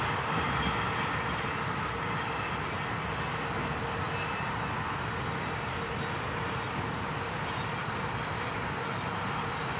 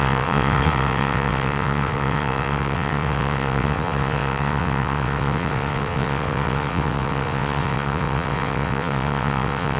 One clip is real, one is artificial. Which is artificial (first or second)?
second